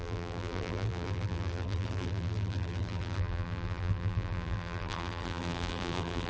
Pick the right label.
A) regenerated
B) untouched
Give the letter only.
A